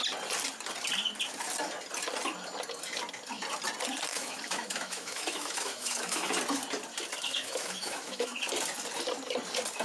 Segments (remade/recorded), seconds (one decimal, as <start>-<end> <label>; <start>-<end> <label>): 0.0-4.1 recorded; 4.1-6.3 remade; 6.3-7.3 recorded; 7.3-8.4 remade; 8.4-9.8 recorded

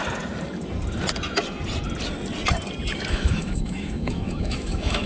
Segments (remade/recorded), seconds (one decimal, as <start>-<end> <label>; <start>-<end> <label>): 0.0-3.1 recorded; 3.1-5.1 remade